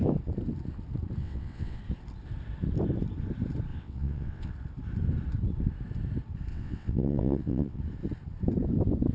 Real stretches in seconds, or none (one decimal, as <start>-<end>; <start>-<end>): 0.0-1.2; 1.8-3.7; 4.5-6.5; 7.8-9.1